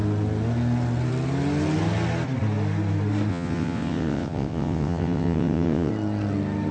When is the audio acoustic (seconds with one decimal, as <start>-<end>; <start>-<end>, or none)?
0.0-3.3; 5.9-6.7